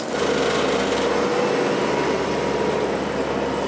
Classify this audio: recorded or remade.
recorded